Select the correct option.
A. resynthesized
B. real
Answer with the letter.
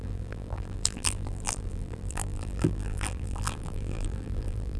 A